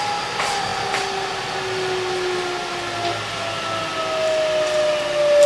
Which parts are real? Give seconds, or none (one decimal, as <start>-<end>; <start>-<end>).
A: 0.0-5.5